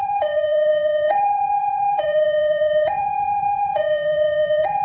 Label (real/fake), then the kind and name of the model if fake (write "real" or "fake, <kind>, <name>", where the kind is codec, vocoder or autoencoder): fake, vocoder, Vocos